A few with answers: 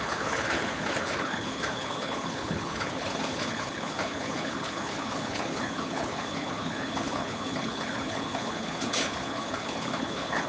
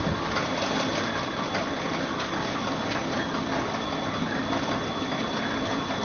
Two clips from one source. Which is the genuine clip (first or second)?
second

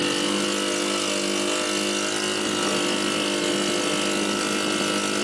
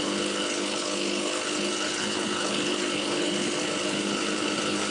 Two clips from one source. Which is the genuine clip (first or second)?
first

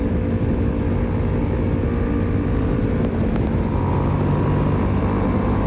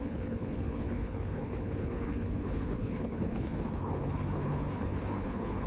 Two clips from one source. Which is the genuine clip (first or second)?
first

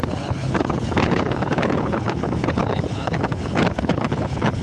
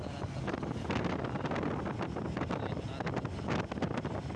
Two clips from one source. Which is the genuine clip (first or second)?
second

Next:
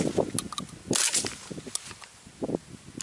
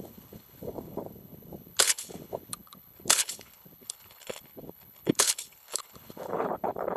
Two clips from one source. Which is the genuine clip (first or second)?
first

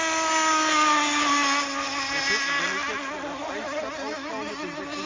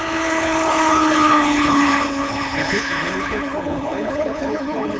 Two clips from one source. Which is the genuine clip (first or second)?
first